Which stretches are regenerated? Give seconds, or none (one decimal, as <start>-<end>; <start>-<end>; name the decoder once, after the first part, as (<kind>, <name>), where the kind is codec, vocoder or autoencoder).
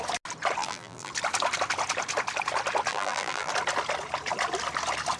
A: 0.6-1.1 (vocoder, BigVGAN v2); 2.9-3.5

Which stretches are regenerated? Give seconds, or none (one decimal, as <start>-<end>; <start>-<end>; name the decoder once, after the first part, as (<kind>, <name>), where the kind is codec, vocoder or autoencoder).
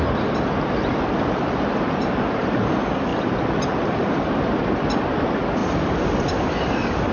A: none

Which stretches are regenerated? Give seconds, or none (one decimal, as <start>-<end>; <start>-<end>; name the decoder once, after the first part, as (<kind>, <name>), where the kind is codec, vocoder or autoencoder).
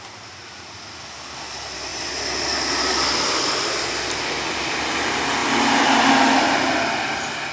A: none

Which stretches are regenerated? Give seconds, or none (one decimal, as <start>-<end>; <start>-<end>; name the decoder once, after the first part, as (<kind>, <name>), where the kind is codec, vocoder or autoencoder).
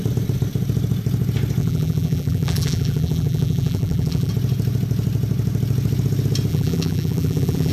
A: 1.6-4.3 (vocoder, BigVGAN v2); 6.5-7.7